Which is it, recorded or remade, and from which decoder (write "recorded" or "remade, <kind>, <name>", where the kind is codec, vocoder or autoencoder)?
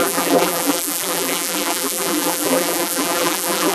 remade, vocoder, BigVGAN v2